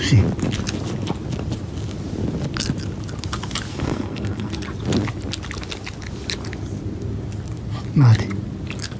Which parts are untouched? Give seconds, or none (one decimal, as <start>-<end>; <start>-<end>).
0.0-3.7; 4.5-9.0